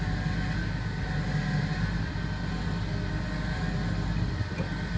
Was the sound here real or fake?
real